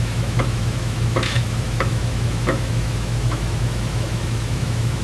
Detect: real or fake fake